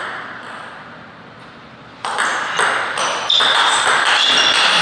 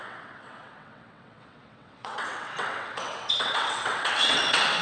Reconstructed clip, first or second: second